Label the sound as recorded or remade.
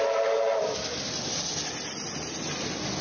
recorded